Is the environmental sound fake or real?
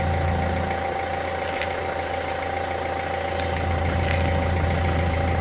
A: real